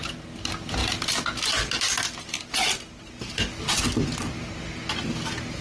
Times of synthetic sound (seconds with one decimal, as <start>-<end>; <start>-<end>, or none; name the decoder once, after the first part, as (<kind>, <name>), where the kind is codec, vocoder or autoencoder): none